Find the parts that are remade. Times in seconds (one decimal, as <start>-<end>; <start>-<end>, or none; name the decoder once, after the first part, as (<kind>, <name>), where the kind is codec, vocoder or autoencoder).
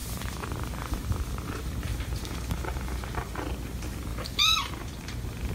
0.0-3.3 (vocoder, BigVGAN v2); 4.1-5.5